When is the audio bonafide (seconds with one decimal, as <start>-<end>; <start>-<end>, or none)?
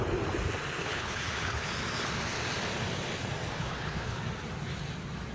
0.0-0.8; 1.7-3.5; 4.2-5.3